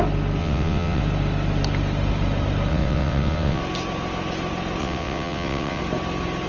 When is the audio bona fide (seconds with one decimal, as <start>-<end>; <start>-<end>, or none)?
0.0-0.4; 1.0-2.7; 3.6-4.8; 5.8-6.5